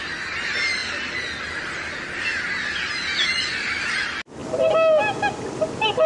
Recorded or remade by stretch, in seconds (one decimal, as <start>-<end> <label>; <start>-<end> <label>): 0.0-6.1 recorded

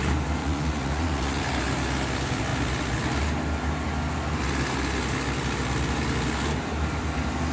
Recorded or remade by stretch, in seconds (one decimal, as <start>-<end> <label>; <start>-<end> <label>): 0.0-0.4 recorded; 0.4-1.4 remade; 1.4-7.5 recorded

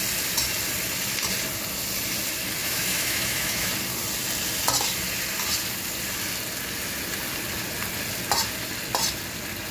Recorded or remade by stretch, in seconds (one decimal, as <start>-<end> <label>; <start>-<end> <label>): 0.0-2.6 recorded; 2.6-3.7 remade; 3.7-9.7 recorded

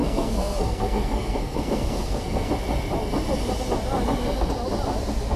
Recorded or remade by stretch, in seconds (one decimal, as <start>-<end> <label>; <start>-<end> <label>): 0.0-2.5 remade; 2.5-5.4 recorded